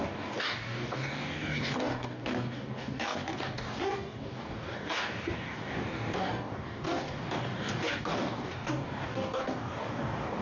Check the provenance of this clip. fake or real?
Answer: fake